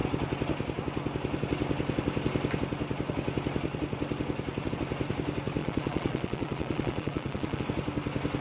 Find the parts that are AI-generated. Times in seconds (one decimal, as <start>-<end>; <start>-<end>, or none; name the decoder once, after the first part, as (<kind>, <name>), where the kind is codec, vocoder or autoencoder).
5.6-7.6 (vocoder, Vocos)